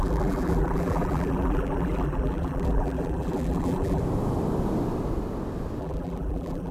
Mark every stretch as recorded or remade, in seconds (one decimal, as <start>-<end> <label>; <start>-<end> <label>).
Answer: 0.0-4.0 remade; 4.0-5.8 recorded; 5.8-6.7 remade

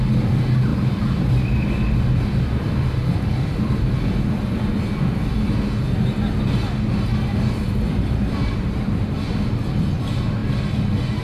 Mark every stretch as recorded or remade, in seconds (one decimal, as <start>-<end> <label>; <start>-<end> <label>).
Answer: 0.0-0.7 recorded; 0.7-5.6 remade; 5.6-7.1 recorded; 7.1-8.9 remade; 8.9-11.2 recorded

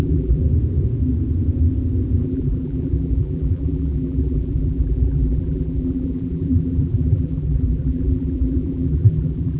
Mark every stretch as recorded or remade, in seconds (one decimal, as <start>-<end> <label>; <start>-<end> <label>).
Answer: 0.0-0.4 remade; 0.4-2.2 recorded; 2.2-9.6 remade

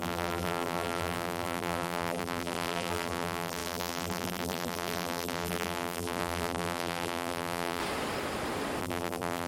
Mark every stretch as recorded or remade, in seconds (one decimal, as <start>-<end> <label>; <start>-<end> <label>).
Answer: 0.0-7.8 remade; 7.8-8.8 recorded; 8.8-9.5 remade

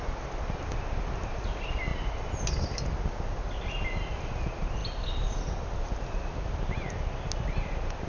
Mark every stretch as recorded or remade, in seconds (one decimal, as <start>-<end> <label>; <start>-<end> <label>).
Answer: 0.0-8.1 recorded

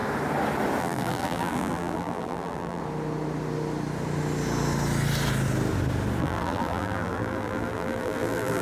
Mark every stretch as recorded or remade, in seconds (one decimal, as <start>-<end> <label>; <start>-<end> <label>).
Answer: 0.0-0.8 recorded; 0.8-2.8 remade; 2.8-6.2 recorded; 6.2-8.6 remade